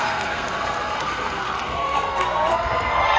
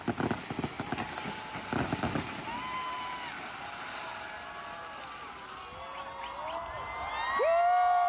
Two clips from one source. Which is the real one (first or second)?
second